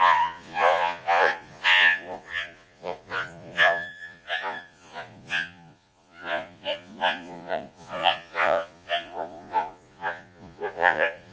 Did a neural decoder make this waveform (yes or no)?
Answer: yes